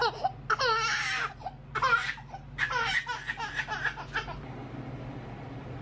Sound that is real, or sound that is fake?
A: real